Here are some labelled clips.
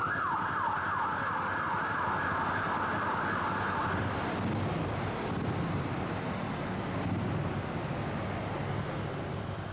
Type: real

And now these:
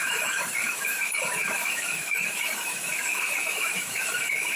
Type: fake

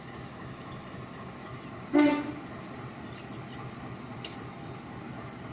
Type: real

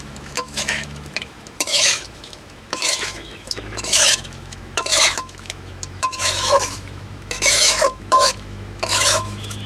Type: fake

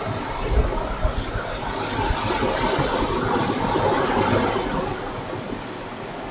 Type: real